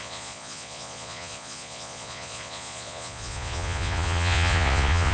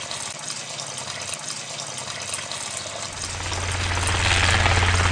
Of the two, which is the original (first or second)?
second